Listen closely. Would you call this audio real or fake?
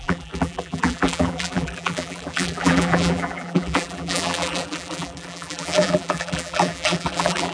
fake